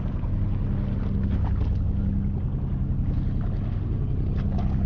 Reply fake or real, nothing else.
real